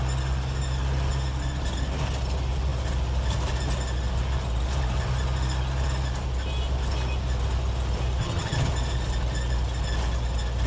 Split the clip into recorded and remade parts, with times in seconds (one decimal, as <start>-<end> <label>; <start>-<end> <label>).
0.0-8.2 recorded; 8.2-8.7 remade; 8.7-10.7 recorded